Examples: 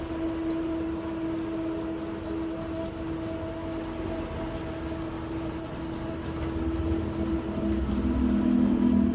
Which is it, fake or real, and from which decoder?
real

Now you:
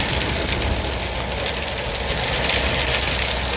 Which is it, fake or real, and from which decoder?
real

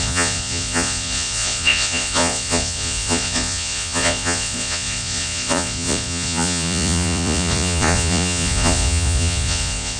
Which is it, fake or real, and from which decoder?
fake, vocoder, Vocos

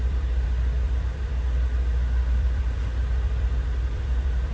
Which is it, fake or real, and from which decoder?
fake, vocoder, BigVGAN v2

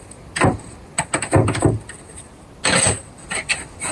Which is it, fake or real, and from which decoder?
real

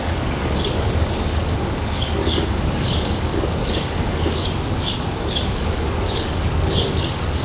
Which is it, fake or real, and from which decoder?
fake, codec, DAC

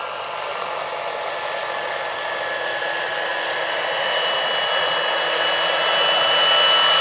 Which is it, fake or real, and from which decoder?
real